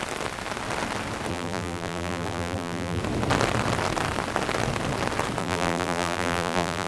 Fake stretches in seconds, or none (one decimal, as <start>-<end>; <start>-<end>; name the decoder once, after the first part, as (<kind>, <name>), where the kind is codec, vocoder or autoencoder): 1.3-3.0 (vocoder, BigVGAN v2); 5.4-6.9